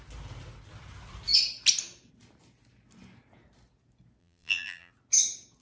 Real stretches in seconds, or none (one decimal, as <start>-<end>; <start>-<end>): 0.0-4.2; 4.9-5.6